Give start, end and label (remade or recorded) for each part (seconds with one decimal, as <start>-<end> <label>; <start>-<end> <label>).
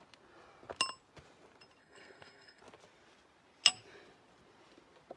0.0-1.8 recorded; 1.8-2.6 remade; 2.6-5.2 recorded